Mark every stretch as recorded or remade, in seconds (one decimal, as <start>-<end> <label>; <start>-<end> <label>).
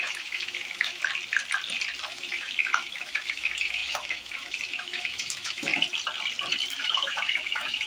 0.0-1.0 remade; 1.0-2.1 recorded; 2.1-5.7 remade; 5.7-6.8 recorded; 6.8-7.9 remade